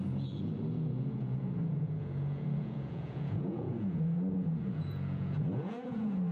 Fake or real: fake